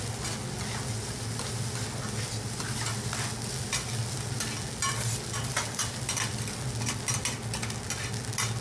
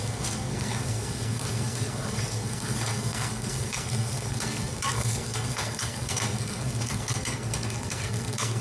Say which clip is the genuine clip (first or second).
first